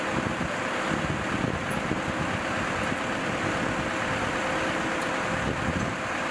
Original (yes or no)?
yes